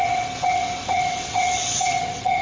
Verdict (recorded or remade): remade